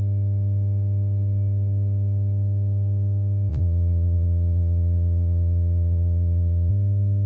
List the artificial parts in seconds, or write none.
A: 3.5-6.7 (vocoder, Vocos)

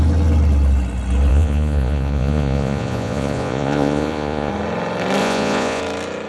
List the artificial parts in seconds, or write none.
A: 1.3-4.5 (vocoder, Vocos); 5.2-5.8